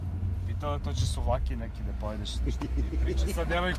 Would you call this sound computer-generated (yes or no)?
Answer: no